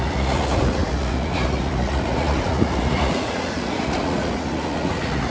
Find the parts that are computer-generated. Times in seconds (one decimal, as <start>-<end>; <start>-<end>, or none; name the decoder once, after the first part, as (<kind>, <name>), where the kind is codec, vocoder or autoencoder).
0.0-5.3 (vocoder, Vocos)

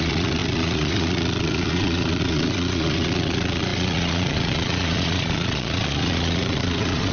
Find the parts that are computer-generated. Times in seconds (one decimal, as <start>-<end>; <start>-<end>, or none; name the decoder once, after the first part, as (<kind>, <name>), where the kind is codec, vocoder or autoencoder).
0.0-7.1 (vocoder, Vocos)

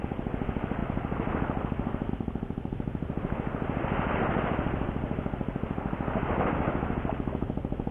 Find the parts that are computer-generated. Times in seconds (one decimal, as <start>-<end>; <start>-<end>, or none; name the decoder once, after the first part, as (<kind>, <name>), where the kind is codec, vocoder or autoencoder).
none

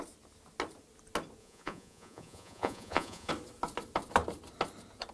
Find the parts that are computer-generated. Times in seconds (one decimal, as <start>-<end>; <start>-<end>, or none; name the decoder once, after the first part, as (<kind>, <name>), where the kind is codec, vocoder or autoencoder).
1.4-3.3 (vocoder, Vocos)